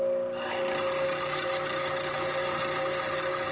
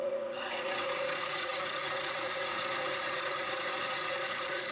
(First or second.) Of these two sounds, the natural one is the first